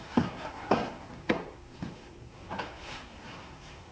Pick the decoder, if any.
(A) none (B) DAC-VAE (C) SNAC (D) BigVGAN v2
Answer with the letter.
C